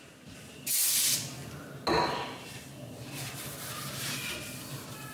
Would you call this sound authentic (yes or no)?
yes